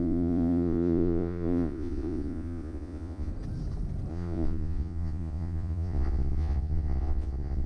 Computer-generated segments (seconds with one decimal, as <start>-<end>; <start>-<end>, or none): 0.0-3.3; 4.1-7.7